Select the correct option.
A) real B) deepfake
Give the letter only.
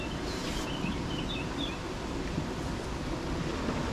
A